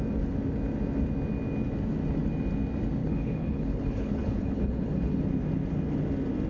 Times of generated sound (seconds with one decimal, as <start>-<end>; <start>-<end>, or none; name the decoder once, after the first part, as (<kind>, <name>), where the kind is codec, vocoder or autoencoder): 3.0-5.2 (codec, HILCodec)